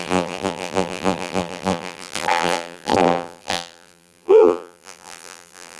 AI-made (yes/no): yes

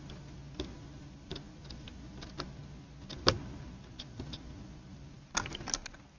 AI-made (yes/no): no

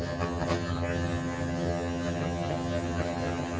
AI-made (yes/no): yes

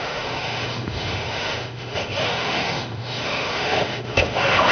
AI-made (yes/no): yes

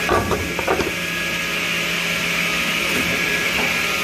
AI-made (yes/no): no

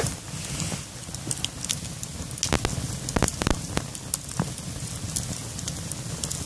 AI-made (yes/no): no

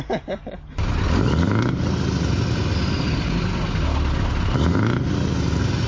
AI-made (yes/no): no